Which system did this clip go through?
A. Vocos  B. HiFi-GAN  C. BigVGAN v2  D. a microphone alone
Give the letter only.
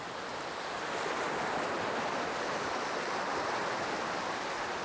D